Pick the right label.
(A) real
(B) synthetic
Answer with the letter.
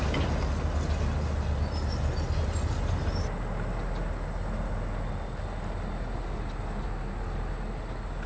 A